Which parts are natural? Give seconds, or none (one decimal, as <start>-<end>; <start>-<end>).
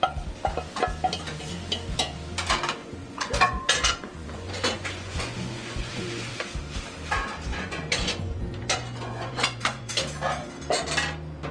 0.0-2.8; 6.3-7.5; 9.9-11.5